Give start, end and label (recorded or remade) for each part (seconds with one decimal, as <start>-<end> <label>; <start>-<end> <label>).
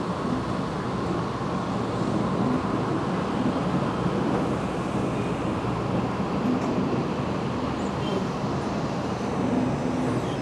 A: 0.0-10.4 recorded